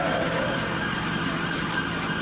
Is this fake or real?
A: real